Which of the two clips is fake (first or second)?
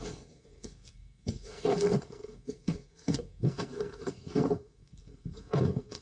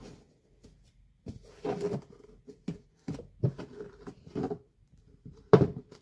first